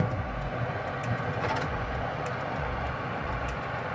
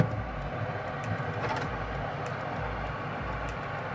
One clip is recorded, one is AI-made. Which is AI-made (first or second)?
first